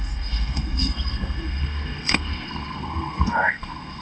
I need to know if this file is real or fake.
fake